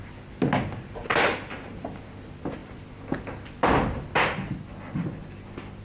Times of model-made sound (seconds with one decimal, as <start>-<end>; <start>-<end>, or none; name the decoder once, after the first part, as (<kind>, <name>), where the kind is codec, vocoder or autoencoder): none